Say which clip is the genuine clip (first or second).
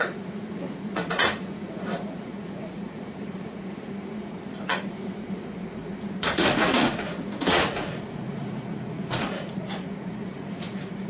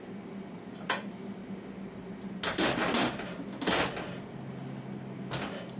second